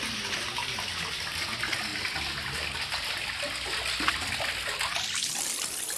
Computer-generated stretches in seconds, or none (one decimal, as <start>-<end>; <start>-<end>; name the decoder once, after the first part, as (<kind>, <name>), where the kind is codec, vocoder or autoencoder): none